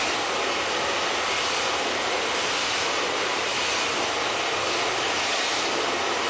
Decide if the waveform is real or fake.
real